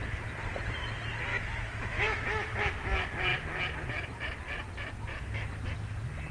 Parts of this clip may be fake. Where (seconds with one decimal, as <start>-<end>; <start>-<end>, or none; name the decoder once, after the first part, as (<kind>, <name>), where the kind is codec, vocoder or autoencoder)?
1.3-2.6 (autoencoder, DAC-VAE)